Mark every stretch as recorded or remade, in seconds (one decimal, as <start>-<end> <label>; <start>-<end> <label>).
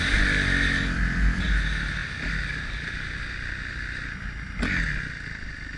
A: 0.0-5.8 recorded